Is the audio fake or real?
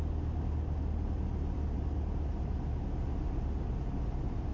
real